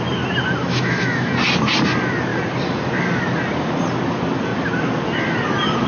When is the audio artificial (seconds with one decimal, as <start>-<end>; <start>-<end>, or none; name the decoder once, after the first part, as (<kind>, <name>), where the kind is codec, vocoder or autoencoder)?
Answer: 0.6-1.3 (autoencoder, DAC-VAE)